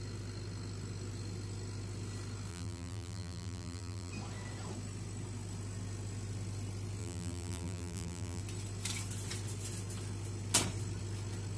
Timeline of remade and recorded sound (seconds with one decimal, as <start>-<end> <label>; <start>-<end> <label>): 0.0-2.5 recorded; 2.5-4.1 remade; 4.1-7.0 recorded; 7.0-8.4 remade; 8.4-11.6 recorded